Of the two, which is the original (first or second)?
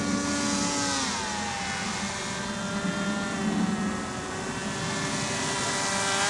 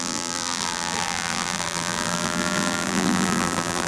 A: first